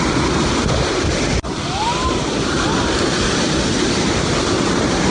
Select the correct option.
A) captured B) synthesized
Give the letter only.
A